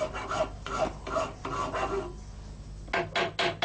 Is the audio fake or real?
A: real